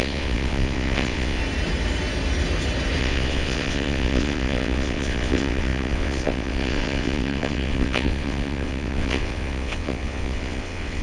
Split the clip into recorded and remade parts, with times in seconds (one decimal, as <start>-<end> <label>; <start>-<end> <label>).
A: 0.0-1.4 remade; 1.4-3.0 recorded; 3.0-11.0 remade